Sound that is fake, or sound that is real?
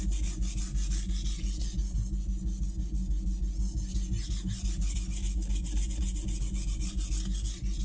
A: real